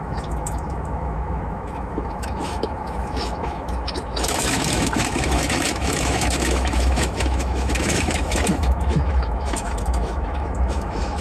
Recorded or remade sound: remade